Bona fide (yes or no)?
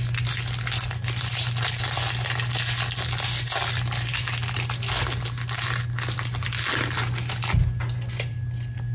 yes